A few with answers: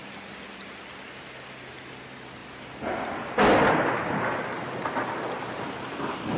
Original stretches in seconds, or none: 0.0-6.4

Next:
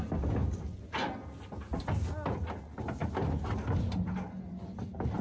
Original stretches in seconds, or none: 0.0-5.2